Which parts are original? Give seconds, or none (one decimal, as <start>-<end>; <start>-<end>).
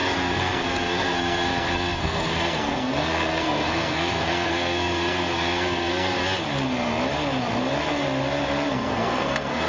6.2-8.7